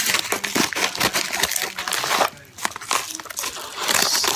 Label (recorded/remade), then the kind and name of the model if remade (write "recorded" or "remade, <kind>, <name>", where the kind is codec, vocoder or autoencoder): recorded